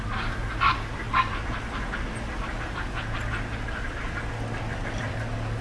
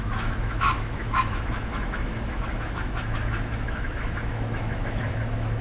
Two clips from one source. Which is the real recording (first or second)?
first